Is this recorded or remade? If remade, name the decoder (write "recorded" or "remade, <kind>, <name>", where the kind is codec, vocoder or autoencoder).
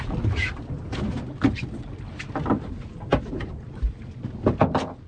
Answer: recorded